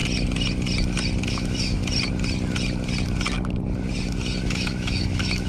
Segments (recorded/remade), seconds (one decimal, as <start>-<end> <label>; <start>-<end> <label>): 0.0-1.3 recorded; 1.3-1.8 remade; 1.8-4.4 recorded; 4.4-5.5 remade